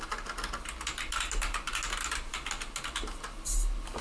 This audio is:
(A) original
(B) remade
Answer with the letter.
A